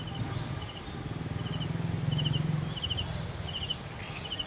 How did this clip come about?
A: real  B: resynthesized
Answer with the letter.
A